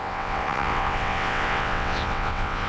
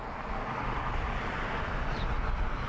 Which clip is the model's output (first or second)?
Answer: first